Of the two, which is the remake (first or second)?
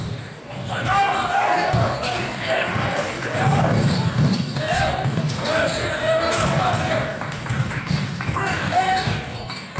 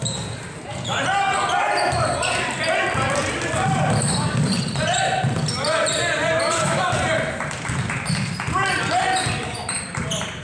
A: first